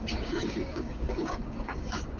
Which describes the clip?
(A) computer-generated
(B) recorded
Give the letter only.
A